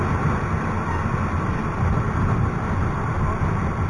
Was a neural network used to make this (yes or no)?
no